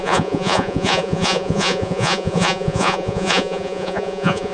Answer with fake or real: fake